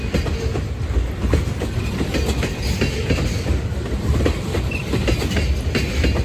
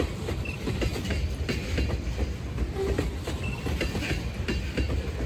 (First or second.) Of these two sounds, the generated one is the second